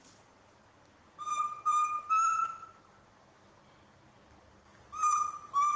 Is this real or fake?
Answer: real